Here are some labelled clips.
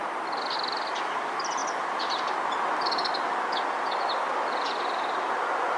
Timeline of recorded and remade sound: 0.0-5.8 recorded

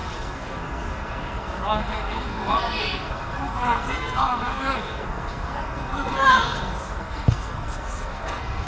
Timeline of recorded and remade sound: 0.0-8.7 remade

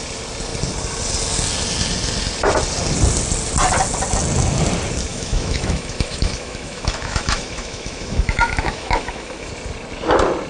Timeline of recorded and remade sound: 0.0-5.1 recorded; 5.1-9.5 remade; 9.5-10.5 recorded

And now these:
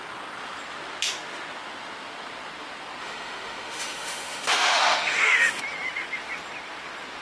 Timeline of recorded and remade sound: 0.0-3.0 recorded; 3.0-5.6 remade; 5.6-7.2 recorded